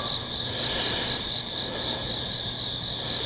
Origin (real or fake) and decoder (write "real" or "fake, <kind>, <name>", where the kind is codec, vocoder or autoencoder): real